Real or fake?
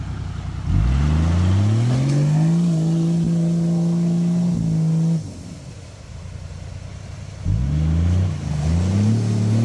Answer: real